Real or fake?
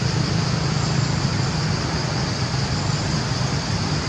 fake